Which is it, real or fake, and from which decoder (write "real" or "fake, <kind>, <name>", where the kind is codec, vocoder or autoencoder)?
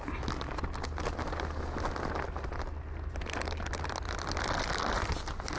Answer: real